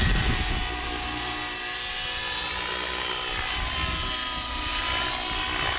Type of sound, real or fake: real